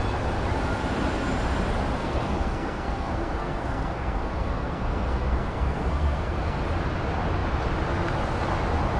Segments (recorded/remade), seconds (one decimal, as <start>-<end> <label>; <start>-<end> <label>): 0.0-2.0 recorded; 2.0-6.6 remade; 6.6-9.0 recorded